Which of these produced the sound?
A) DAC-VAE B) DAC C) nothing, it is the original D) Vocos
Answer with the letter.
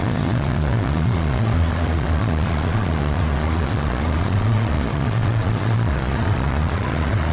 D